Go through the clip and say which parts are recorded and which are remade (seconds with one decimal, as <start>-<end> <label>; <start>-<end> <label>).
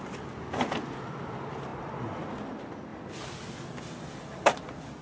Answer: 0.0-5.0 recorded